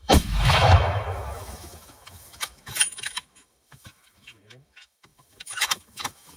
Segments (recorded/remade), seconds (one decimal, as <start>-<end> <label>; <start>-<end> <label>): 0.0-6.4 remade